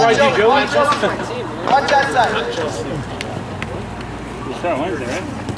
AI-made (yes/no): no